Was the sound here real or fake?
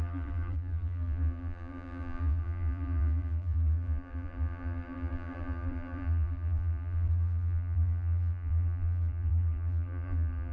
fake